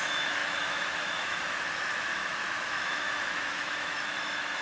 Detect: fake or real fake